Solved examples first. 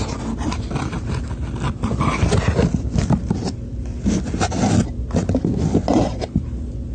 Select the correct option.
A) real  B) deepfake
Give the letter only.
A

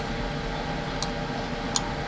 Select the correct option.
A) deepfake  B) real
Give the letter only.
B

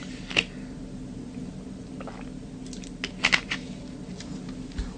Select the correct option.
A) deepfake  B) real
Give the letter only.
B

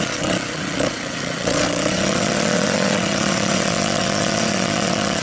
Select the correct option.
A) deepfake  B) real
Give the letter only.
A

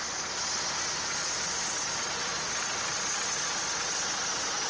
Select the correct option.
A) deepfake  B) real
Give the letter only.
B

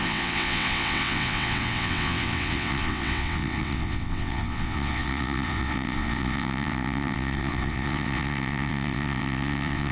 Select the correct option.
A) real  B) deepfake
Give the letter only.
B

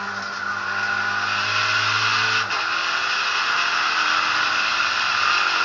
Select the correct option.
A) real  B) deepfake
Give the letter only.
A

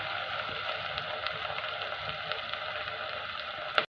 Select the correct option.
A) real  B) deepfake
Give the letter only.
A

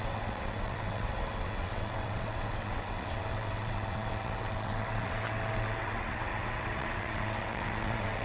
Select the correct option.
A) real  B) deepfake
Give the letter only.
B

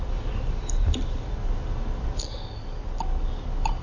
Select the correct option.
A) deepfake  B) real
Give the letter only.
B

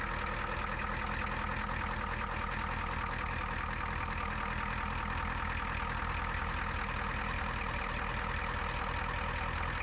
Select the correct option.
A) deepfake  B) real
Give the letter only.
B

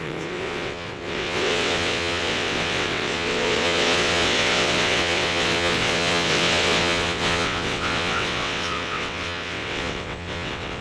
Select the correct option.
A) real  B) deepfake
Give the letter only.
B